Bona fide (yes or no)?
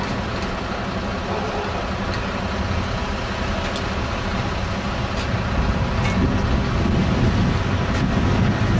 yes